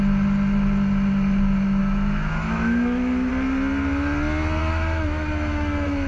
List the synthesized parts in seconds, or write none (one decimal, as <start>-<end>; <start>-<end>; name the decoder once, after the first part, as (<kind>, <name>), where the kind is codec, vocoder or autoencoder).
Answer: 1.8-3.3 (autoencoder, DAC-VAE); 4.6-6.1